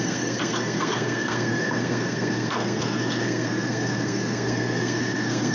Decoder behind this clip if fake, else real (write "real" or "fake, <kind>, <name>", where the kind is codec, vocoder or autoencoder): fake, codec, SNAC